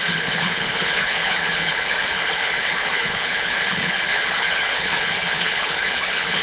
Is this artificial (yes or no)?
yes